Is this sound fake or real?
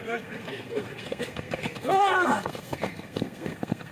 fake